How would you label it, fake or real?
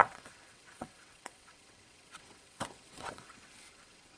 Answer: fake